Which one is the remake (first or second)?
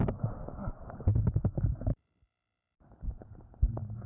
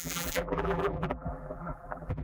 second